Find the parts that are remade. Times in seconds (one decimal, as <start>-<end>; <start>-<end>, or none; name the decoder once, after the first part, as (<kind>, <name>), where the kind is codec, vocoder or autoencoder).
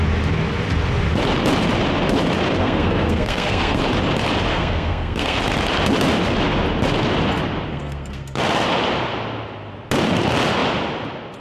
2.6-3.8 (codec, SNAC); 4.5-5.4; 7.7-8.4